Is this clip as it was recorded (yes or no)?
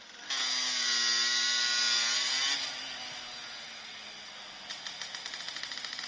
yes